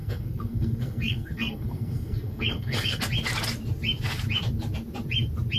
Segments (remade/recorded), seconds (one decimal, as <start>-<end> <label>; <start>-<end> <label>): 0.0-3.0 remade; 3.0-5.6 recorded